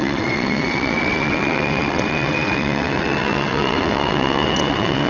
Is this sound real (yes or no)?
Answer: no